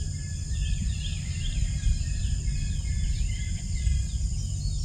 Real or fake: real